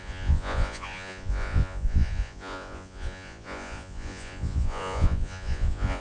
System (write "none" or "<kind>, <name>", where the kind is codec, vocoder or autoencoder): vocoder, Vocos